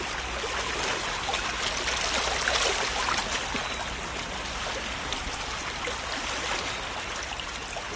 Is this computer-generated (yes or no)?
no